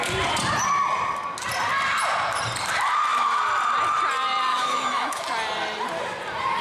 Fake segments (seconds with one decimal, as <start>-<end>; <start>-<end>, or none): 4.5-5.2